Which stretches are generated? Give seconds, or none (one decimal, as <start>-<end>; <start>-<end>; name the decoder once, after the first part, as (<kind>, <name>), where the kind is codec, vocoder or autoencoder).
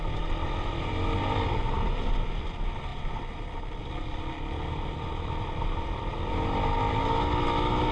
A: none